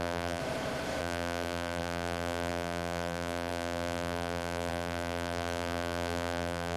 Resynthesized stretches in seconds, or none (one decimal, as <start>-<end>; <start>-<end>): 0.0-0.4; 1.0-6.8